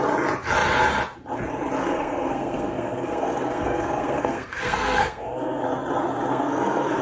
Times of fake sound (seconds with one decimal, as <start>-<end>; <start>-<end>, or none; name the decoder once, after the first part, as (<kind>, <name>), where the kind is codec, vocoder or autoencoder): 1.8-5.6 (codec, SNAC); 6.3-7.0